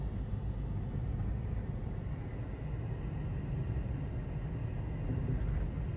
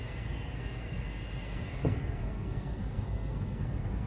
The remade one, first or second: second